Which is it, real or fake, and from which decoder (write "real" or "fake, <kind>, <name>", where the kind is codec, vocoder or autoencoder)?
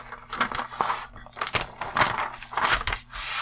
real